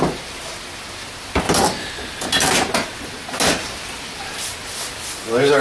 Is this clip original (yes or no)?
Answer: yes